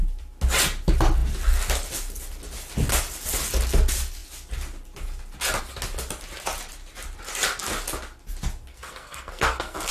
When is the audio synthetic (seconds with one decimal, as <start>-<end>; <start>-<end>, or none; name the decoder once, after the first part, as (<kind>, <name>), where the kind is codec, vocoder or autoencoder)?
8.7-9.9 (codec, SNAC)